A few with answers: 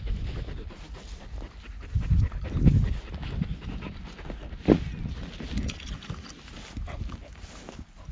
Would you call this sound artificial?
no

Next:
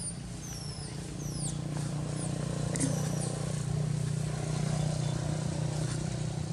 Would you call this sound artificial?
no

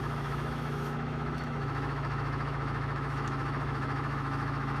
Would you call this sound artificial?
yes